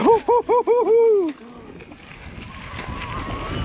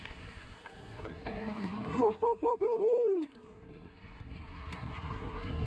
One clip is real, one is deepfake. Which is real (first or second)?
first